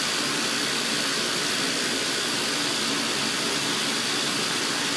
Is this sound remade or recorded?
recorded